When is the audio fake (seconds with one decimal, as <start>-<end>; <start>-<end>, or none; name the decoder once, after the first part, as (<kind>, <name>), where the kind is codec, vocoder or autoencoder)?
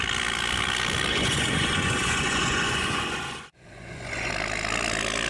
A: 1.1-4.3 (vocoder, Vocos)